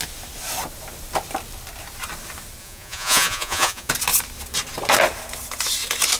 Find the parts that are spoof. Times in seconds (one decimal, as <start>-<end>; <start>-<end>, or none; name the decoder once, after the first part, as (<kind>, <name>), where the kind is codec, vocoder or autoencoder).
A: 2.6-3.9 (vocoder, Vocos)